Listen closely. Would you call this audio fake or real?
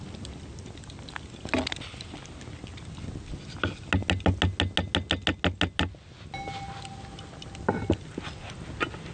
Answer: real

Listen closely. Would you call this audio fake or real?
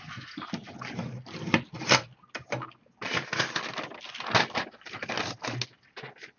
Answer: real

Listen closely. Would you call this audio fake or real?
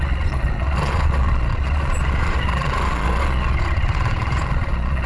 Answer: fake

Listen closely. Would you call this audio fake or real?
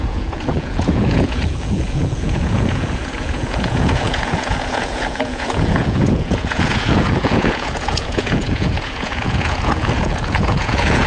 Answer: fake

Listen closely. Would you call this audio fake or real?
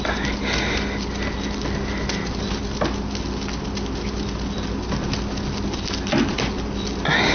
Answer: real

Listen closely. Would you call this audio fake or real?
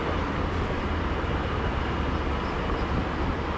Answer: real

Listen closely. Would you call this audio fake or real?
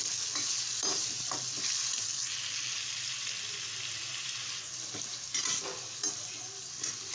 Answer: real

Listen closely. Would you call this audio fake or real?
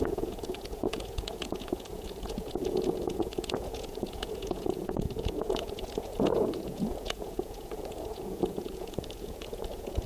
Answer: fake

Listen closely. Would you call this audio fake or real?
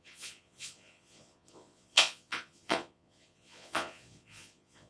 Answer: fake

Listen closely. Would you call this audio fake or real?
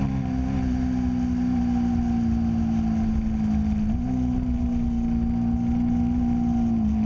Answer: real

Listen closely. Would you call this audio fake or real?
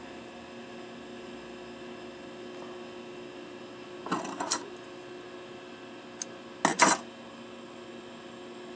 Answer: real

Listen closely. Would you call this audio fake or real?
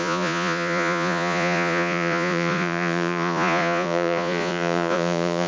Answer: fake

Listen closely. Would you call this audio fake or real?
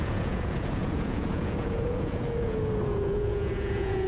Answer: fake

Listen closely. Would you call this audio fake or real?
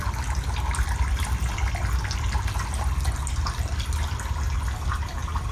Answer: real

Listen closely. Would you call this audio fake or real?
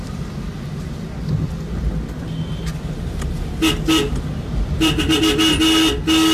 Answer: real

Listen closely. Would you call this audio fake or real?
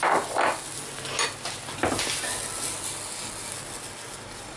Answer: real